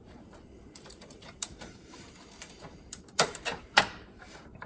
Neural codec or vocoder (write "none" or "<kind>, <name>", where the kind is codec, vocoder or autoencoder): vocoder, BigVGAN v2